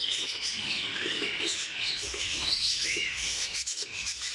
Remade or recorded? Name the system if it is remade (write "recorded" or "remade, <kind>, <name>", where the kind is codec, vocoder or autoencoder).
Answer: remade, autoencoder, DAC-VAE